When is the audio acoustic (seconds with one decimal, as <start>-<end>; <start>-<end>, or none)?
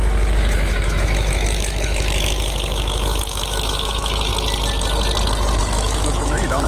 4.3-5.6